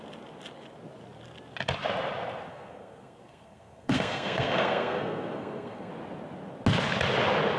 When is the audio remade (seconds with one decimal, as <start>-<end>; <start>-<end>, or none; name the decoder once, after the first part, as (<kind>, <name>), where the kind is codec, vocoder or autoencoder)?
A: 2.5-5.9 (codec, SNAC)